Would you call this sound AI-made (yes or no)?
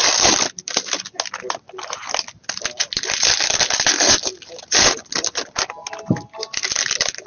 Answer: no